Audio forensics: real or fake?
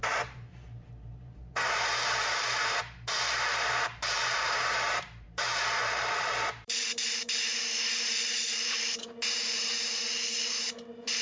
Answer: fake